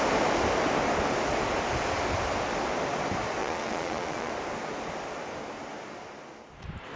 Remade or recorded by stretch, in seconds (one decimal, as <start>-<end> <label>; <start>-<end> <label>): 0.0-3.4 recorded; 3.4-4.3 remade; 4.3-7.0 recorded